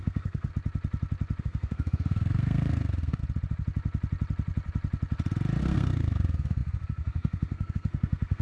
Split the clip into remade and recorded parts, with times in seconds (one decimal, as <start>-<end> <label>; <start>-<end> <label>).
0.0-0.5 remade; 0.5-1.4 recorded; 1.4-3.2 remade; 3.2-5.6 recorded; 5.6-8.4 remade